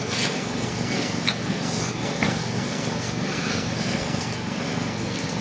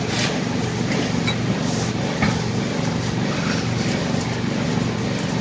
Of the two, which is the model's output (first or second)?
first